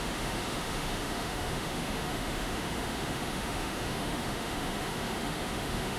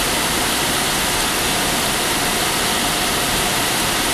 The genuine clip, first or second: second